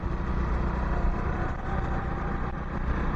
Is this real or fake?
real